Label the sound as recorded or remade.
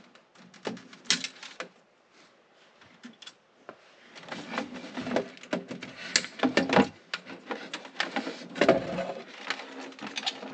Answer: recorded